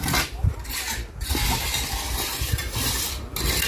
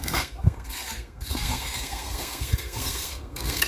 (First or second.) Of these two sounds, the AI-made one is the second